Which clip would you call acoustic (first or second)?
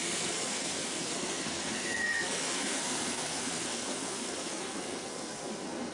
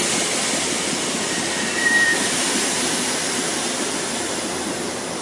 second